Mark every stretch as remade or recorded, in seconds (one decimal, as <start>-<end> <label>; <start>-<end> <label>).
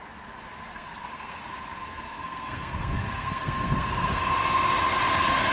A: 0.0-0.7 recorded; 0.7-1.4 remade; 1.4-1.8 recorded; 1.8-4.2 remade; 4.2-5.5 recorded